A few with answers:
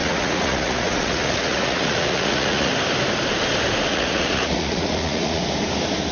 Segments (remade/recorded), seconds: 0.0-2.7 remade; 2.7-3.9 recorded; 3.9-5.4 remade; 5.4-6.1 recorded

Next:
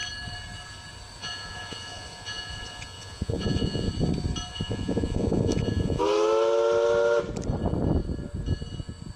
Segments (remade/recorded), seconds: 0.0-1.2 recorded; 1.2-3.9 remade; 3.9-4.5 recorded; 4.5-6.0 remade; 6.0-9.2 recorded

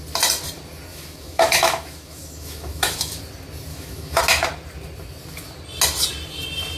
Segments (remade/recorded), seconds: 0.0-0.9 recorded; 0.9-3.2 remade; 3.2-3.7 recorded; 3.7-4.2 remade; 4.2-6.8 recorded

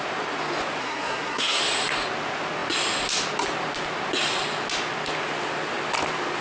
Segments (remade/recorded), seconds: 0.0-0.8 recorded; 0.8-1.6 remade; 1.6-6.4 recorded

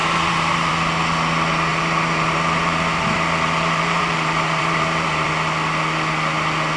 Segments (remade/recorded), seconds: 0.0-0.7 remade; 0.7-1.7 recorded; 1.7-5.3 remade; 5.3-6.8 recorded

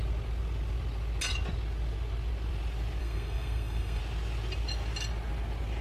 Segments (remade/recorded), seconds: 0.0-3.0 recorded; 3.0-4.0 remade; 4.0-5.8 recorded